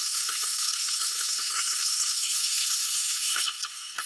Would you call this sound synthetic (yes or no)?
yes